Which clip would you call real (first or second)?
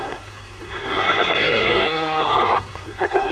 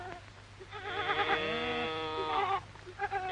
second